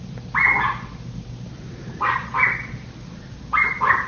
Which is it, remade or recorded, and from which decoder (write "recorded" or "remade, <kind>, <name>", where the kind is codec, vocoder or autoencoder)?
recorded